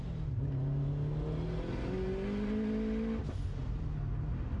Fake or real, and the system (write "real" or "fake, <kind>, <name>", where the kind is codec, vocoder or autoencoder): real